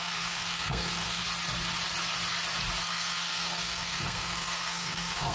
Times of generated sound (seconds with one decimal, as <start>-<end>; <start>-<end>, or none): 0.0-1.2; 2.8-5.3